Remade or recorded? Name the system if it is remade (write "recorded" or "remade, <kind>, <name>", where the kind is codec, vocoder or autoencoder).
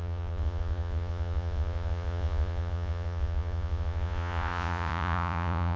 remade, vocoder, Vocos